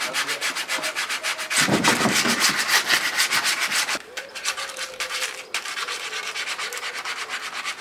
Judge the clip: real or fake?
real